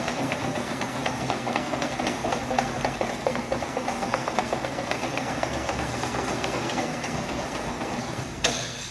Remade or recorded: remade